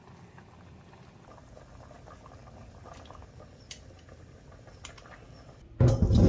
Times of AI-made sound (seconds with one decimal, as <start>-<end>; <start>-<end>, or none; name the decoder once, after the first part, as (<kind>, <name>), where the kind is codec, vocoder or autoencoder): none